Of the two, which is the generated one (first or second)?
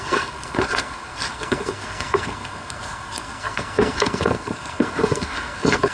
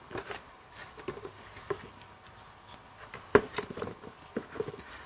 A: first